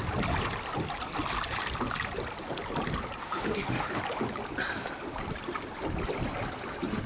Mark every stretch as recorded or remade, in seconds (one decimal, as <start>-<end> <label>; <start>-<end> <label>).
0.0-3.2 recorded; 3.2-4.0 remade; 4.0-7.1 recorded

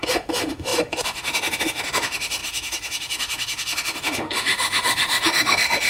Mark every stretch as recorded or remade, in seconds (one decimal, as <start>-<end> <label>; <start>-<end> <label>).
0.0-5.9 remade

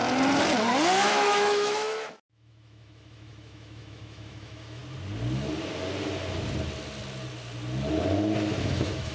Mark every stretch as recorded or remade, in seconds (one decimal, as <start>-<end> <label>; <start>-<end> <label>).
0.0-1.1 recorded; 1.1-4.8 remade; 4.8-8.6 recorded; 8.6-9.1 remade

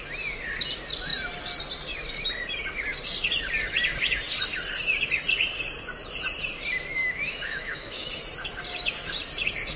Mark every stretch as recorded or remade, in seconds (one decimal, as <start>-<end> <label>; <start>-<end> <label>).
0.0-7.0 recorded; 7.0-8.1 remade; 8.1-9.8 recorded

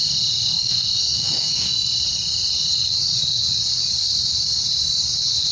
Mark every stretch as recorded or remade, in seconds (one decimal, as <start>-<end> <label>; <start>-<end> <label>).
0.0-0.6 recorded; 0.6-1.9 remade; 1.9-5.5 recorded

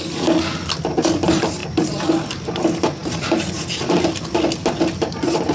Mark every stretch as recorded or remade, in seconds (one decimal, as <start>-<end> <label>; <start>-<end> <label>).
0.0-5.5 recorded

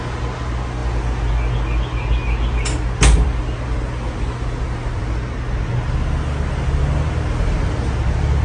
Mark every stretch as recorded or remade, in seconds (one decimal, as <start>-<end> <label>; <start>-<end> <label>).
0.0-8.4 recorded

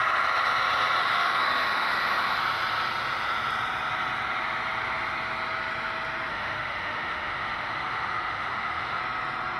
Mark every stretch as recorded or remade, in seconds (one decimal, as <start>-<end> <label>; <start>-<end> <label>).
0.0-1.0 recorded; 1.0-2.4 remade; 2.4-6.3 recorded; 6.3-9.0 remade; 9.0-9.6 recorded